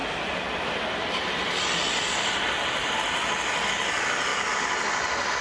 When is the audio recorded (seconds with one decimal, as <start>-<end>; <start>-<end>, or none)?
none